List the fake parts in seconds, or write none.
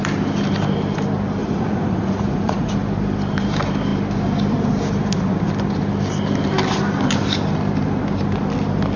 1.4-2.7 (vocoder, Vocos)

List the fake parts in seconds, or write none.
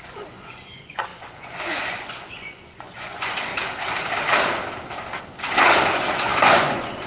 0.0-3.5 (vocoder, Vocos); 5.2-7.1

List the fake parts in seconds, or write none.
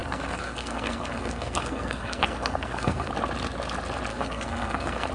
0.0-3.1 (codec, SNAC); 4.1-5.1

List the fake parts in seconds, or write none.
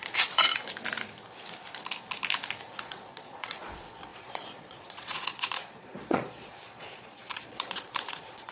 0.0-0.5 (vocoder, Vocos); 2.8-8.5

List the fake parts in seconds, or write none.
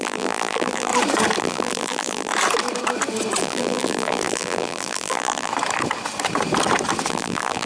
0.0-0.9 (vocoder, BigVGAN v2); 1.4-2.3; 3.4-5.5; 7.1-7.7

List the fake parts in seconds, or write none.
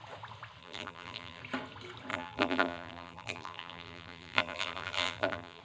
0.6-1.4 (vocoder, BigVGAN v2); 2.1-5.6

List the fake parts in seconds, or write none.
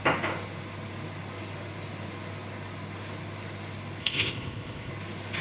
4.0-4.9 (codec, ZipCodec)